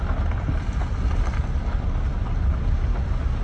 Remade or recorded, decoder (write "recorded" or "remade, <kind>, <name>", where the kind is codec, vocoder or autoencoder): recorded